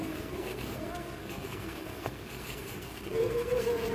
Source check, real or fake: fake